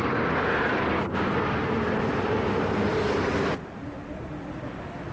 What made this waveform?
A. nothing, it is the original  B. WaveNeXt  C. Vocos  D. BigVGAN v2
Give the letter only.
A